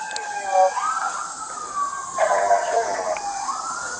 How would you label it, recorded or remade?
recorded